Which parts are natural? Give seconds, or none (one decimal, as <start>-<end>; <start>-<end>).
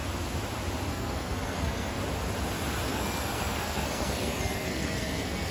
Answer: 0.0-0.9; 2.0-2.9